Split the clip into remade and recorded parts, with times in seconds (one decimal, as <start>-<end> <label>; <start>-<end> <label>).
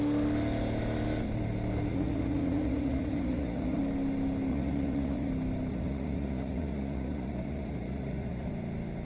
0.0-1.9 recorded; 1.9-3.8 remade; 3.8-4.5 recorded; 4.5-5.3 remade; 5.3-5.7 recorded; 5.7-8.5 remade; 8.5-9.0 recorded